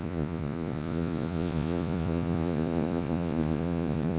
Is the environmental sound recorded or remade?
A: remade